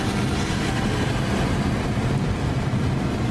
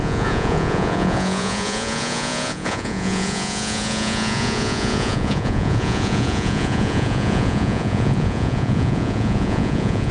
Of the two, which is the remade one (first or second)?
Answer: second